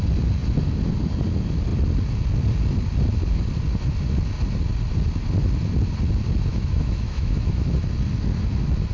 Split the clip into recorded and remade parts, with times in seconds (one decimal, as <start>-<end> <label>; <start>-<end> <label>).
0.0-6.5 recorded; 6.5-7.7 remade; 7.7-8.9 recorded